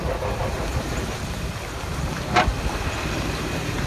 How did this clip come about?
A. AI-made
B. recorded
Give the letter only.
A